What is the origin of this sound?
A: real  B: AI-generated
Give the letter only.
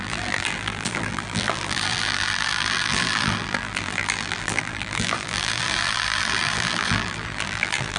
B